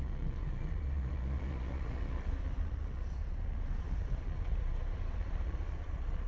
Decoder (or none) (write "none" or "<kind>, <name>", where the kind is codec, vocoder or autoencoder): vocoder, Vocos